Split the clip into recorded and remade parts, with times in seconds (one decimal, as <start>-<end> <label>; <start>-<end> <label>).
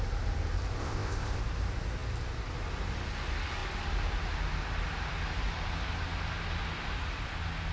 0.0-0.8 recorded; 0.8-1.4 remade; 1.4-7.7 recorded